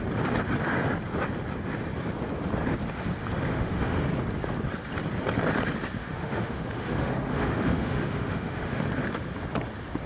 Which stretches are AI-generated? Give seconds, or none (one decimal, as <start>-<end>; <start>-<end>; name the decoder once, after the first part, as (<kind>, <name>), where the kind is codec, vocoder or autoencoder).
3.5-4.0 (autoencoder, DAC-VAE); 6.0-8.9